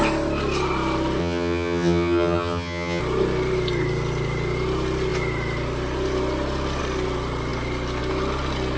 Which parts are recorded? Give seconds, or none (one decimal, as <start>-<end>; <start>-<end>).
0.0-1.2; 3.0-8.8